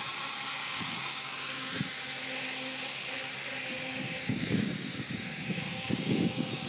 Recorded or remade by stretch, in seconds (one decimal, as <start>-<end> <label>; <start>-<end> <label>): 0.0-0.6 recorded; 0.6-1.7 remade; 1.7-3.9 recorded; 3.9-6.7 remade